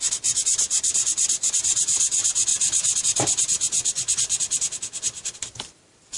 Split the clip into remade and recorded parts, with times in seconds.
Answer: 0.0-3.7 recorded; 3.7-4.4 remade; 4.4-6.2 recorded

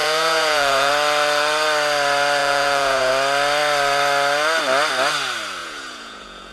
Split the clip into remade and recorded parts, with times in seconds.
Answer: 0.0-0.9 remade; 0.9-2.4 recorded; 2.4-3.1 remade; 3.1-5.6 recorded; 5.6-6.5 remade

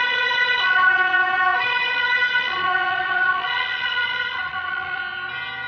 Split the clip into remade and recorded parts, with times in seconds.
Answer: 0.0-5.0 remade; 5.0-5.7 recorded

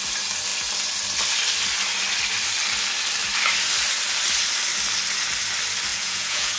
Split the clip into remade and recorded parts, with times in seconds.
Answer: 0.0-5.9 recorded; 5.9-6.6 remade

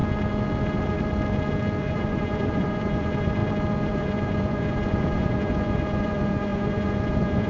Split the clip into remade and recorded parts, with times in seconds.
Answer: 0.0-1.8 recorded; 1.8-3.4 remade; 3.4-3.9 recorded; 3.9-7.5 remade

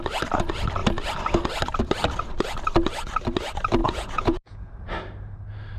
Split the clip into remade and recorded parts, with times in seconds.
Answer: 0.0-3.8 recorded; 3.8-4.7 remade; 4.7-5.8 recorded

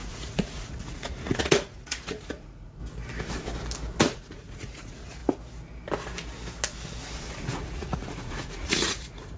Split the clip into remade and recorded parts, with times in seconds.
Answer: 0.0-2.8 remade; 2.8-4.0 recorded; 4.0-5.2 remade; 5.2-7.3 recorded; 7.3-9.4 remade

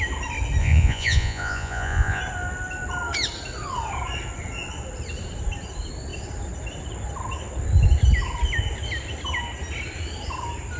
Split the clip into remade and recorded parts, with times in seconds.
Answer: 0.0-0.6 recorded; 0.6-2.2 remade; 2.2-10.8 recorded